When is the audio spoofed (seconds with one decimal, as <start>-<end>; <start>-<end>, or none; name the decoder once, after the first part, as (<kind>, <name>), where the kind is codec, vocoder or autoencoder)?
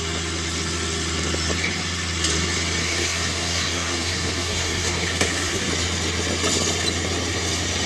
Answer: 2.8-5.7 (codec, SNAC)